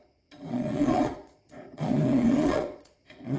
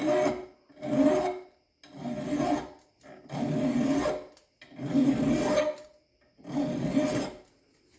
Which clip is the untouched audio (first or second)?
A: second